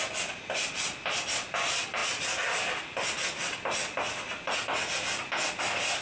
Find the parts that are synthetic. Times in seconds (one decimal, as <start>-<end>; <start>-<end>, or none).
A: none